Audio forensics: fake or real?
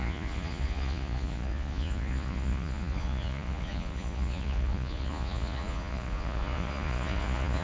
fake